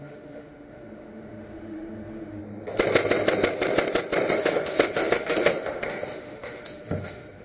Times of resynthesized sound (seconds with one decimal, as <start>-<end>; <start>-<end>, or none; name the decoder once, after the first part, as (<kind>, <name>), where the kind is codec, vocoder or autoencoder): 0.0-2.4 (autoencoder, DAC-VAE); 4.3-7.4